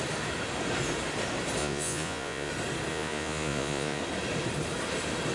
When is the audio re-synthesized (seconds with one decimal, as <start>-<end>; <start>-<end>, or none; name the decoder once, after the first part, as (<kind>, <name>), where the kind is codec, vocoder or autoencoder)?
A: 1.6-2.5 (vocoder, Vocos); 2.9-4.0